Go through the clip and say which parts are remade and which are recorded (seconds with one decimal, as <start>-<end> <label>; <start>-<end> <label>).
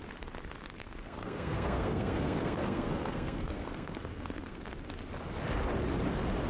0.0-0.8 recorded; 0.8-4.7 remade; 4.7-6.5 recorded